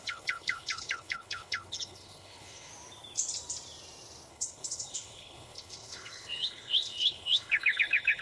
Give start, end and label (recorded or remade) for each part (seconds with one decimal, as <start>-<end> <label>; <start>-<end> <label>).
0.0-2.7 remade; 2.7-4.3 recorded; 4.3-8.2 remade